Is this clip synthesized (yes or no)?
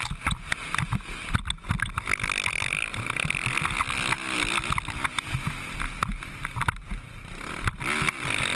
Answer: no